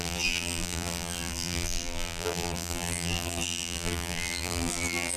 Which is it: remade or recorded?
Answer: remade